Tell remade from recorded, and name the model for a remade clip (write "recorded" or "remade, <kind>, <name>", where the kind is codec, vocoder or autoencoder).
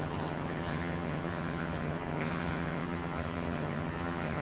remade, vocoder, HiFi-GAN